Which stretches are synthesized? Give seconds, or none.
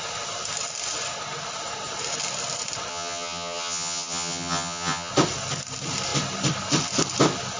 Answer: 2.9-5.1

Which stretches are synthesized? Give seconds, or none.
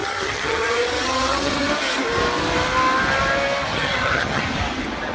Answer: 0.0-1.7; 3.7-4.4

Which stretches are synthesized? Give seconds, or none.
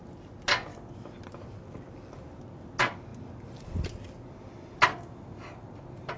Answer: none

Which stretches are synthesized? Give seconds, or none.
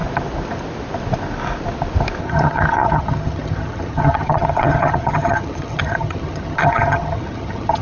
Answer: 2.2-7.8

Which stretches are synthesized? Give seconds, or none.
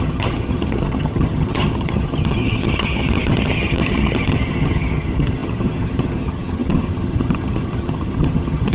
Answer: 0.0-8.7